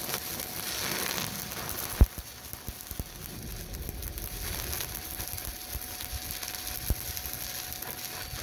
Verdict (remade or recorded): recorded